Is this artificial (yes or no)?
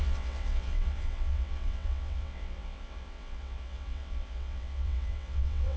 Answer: yes